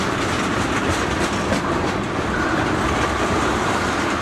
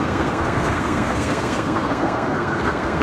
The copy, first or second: second